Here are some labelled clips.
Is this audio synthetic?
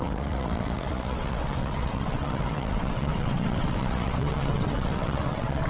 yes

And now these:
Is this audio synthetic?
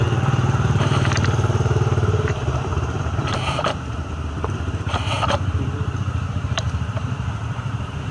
yes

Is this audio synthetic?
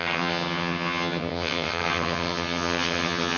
yes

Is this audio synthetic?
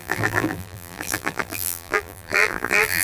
yes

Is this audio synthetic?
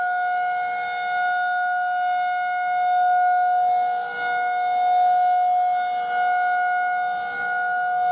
no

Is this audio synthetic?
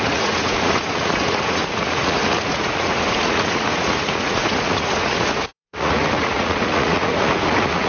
yes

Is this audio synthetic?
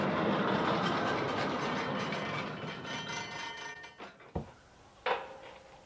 no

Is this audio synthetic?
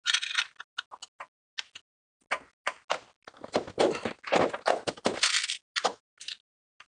no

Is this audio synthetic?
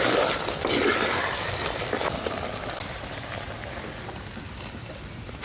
no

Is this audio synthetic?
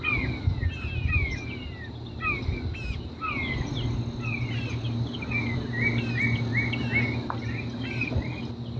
no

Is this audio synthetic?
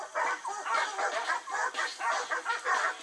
no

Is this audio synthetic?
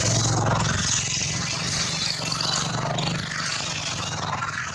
no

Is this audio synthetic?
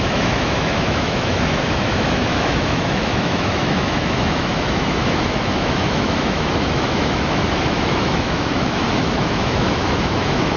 yes